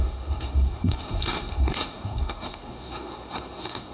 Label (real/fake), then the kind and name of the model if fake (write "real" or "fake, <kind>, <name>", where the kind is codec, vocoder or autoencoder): fake, codec, SNAC